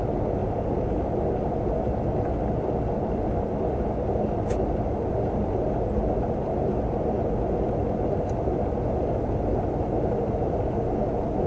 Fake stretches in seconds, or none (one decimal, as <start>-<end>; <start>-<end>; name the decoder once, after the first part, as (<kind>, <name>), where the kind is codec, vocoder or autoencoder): 0.4-1.1 (vocoder, BigVGAN v2)